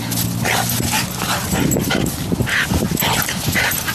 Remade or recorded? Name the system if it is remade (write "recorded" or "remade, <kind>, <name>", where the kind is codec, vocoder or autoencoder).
recorded